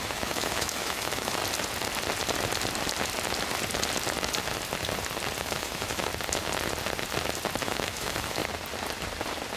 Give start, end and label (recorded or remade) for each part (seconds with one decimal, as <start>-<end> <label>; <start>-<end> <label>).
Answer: 0.0-1.4 remade; 1.4-5.4 recorded; 5.4-6.1 remade; 6.1-7.6 recorded; 7.6-8.4 remade; 8.4-9.6 recorded